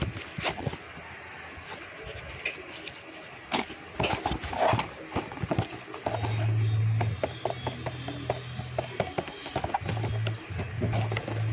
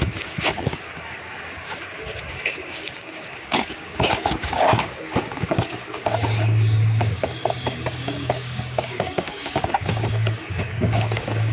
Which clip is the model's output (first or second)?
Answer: second